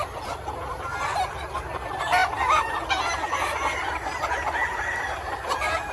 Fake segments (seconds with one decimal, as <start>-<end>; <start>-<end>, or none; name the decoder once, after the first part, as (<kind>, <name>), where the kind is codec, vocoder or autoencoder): none